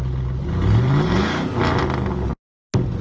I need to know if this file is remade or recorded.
recorded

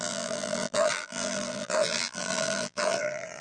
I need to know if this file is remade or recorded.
remade